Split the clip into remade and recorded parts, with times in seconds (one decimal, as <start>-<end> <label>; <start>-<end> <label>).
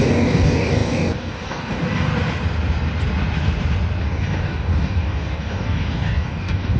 0.0-2.1 remade; 2.1-4.0 recorded; 4.0-6.8 remade